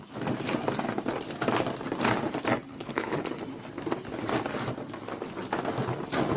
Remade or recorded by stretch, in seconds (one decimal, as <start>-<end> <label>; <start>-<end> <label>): 0.0-2.7 recorded; 2.7-3.4 remade; 3.4-6.4 recorded